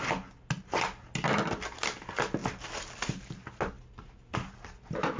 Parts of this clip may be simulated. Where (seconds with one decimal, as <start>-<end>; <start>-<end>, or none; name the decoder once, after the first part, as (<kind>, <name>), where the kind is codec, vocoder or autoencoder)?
none